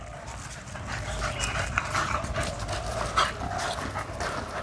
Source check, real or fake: real